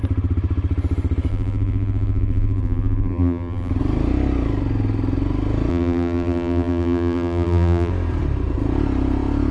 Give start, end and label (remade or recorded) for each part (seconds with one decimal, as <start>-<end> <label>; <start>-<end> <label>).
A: 0.0-1.3 recorded; 1.3-3.7 remade; 3.7-5.7 recorded; 5.7-7.9 remade; 7.9-9.5 recorded